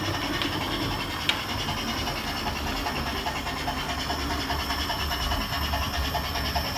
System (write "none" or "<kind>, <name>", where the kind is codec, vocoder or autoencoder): none